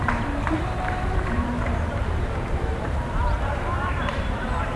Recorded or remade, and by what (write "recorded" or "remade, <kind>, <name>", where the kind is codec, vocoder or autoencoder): remade, vocoder, BigVGAN v2